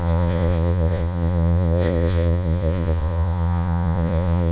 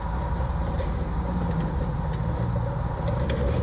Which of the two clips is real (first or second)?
second